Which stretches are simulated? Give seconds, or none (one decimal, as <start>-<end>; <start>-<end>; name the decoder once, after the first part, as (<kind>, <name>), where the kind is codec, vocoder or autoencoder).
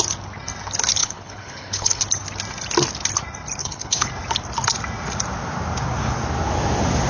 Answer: 1.0-2.0 (codec, HILCodec); 3.6-4.1